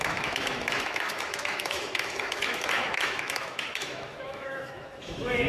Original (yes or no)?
no